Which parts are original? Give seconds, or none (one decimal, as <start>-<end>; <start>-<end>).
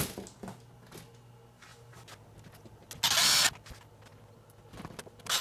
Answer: 0.0-5.4